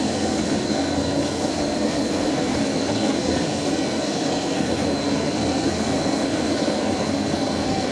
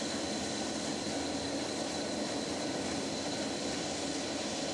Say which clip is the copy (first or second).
first